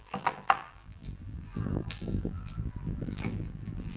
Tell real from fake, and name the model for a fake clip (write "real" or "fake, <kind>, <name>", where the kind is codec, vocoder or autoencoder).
fake, vocoder, BigVGAN v2